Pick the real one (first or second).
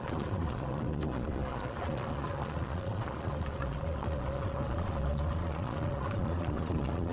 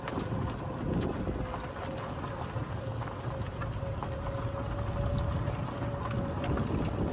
second